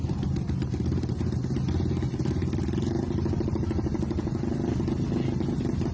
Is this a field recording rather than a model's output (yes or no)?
yes